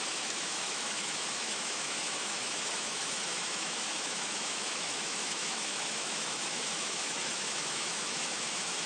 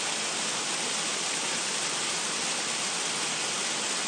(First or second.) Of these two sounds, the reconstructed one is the first